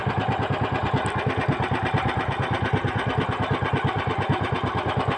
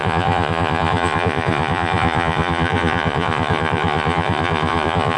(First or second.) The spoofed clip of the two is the second